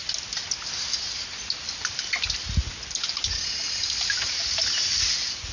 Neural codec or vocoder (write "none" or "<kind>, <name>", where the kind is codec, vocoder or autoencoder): none